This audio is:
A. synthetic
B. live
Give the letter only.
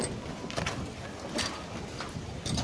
B